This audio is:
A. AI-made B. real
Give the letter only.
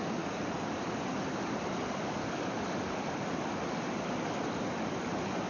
B